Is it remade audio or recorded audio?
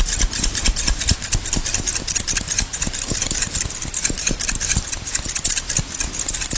recorded